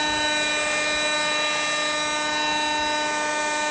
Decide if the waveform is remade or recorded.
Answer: recorded